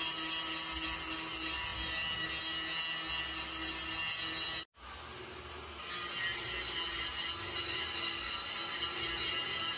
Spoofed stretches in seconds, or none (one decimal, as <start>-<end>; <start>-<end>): none